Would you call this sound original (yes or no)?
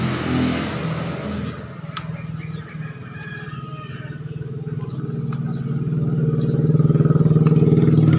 yes